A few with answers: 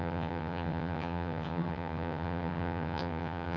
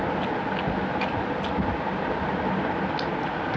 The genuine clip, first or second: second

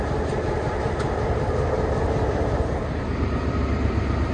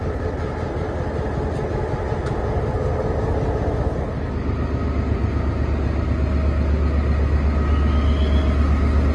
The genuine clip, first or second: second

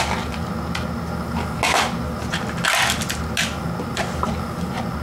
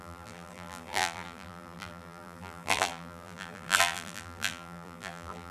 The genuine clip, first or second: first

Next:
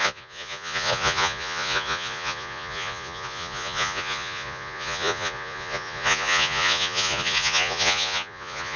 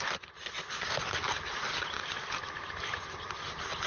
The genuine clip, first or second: second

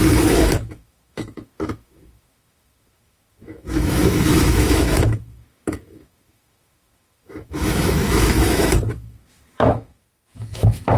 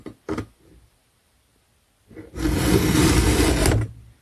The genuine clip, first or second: second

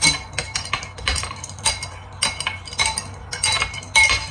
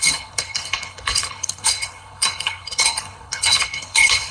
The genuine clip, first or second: first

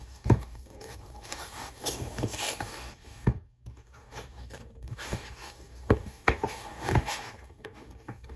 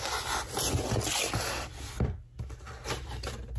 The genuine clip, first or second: second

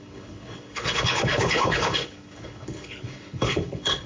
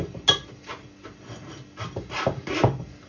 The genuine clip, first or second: second